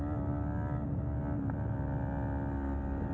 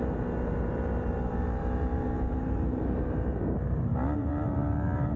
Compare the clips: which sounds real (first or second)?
first